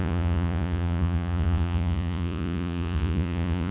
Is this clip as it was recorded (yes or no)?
no